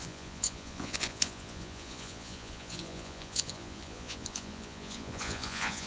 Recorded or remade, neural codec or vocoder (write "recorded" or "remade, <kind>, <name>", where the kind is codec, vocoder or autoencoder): remade, vocoder, Vocos